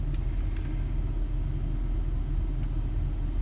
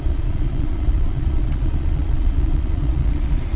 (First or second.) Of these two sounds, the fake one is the second